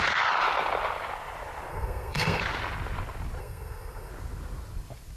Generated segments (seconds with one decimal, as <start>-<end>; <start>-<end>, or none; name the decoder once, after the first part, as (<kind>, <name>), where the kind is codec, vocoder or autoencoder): 1.7-2.4 (codec, SNAC); 3.4-4.1